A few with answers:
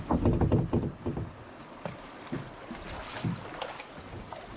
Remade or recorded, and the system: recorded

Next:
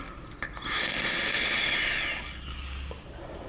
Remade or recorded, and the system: recorded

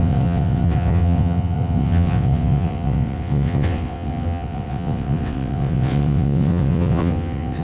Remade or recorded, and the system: remade, vocoder, WaveNeXt